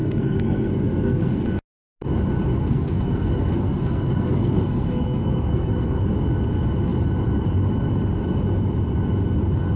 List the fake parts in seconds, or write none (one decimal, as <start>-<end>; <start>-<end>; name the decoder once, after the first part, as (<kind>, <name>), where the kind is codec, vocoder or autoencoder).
0.0-1.5 (codec, SNAC); 2.6-6.0